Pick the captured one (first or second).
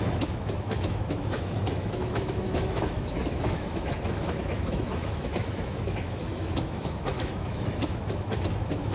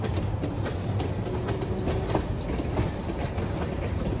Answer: second